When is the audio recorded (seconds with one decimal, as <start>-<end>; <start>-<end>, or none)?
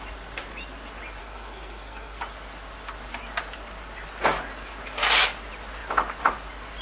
0.0-1.2; 2.2-6.8